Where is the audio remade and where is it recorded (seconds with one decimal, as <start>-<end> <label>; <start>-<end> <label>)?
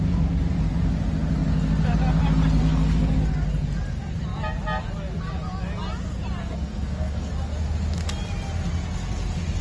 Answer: 0.0-2.6 recorded; 2.6-3.2 remade; 3.2-6.4 recorded; 6.4-7.3 remade; 7.3-9.6 recorded